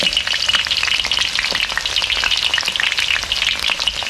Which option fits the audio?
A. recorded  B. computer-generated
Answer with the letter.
A